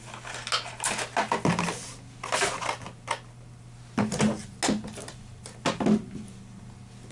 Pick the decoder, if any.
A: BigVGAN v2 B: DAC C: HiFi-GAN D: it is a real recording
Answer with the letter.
D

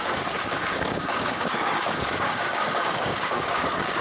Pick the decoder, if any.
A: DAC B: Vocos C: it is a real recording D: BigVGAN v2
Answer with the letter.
A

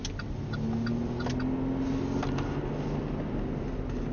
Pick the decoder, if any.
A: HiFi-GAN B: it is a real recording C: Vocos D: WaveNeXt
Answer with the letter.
B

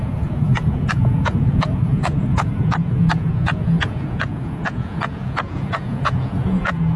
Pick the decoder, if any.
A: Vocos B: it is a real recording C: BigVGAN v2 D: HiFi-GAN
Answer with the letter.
A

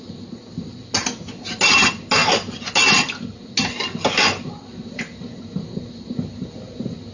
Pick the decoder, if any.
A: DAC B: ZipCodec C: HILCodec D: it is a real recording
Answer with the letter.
D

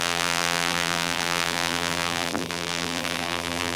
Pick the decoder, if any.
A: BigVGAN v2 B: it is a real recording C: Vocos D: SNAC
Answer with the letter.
A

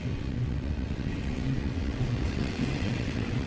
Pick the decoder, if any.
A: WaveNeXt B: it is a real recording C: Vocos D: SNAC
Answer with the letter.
A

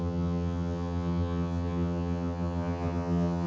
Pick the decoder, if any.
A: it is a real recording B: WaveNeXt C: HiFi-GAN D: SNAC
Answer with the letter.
C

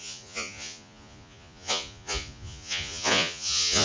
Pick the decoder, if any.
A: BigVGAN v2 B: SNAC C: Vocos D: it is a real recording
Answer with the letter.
C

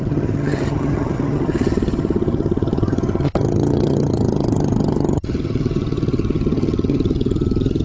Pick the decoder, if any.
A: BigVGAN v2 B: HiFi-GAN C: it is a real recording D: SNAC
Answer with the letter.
B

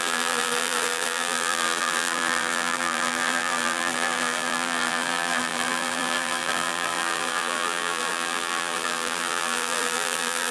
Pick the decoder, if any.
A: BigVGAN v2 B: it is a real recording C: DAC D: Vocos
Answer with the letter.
A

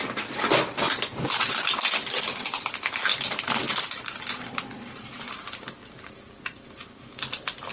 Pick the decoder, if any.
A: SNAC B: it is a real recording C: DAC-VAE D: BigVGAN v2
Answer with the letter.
B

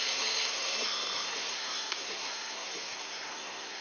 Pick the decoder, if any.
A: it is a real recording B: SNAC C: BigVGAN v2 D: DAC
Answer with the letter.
B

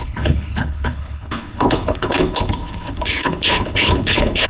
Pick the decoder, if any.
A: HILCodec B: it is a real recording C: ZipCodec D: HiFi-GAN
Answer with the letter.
A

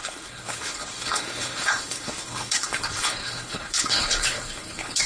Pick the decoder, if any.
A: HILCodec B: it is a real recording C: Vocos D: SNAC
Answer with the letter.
A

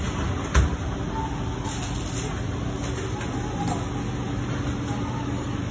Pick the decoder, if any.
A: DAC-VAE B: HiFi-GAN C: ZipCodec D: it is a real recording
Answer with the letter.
D